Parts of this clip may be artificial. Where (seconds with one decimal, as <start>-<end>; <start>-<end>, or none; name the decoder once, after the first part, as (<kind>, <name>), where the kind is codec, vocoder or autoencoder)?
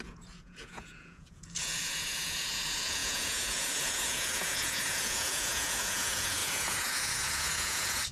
0.0-8.1 (vocoder, Vocos)